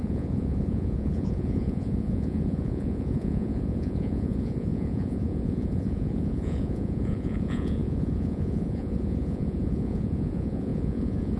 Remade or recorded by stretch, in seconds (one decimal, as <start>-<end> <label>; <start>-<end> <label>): 0.0-11.4 remade